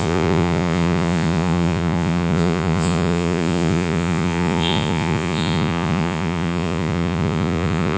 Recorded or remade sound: remade